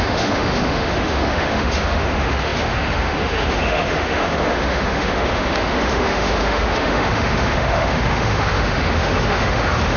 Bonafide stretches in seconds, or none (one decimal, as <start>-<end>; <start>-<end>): none